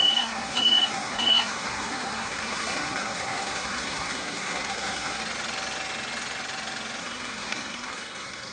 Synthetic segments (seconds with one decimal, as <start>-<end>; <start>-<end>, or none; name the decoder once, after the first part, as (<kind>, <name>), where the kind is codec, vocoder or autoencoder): 0.0-5.2 (codec, SNAC); 7.0-8.5